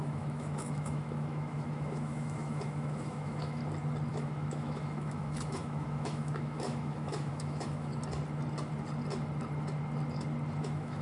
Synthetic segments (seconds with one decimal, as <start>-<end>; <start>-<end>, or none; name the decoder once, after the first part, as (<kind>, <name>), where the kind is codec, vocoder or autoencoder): 0.0-3.6 (autoencoder, DAC-VAE); 4.1-7.9; 10.6-11.0